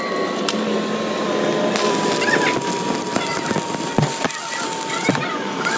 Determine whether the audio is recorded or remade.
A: recorded